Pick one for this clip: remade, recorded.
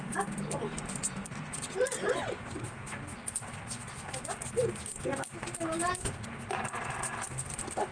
recorded